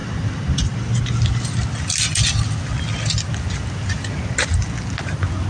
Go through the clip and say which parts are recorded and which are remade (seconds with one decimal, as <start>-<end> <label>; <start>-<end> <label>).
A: 0.0-5.5 recorded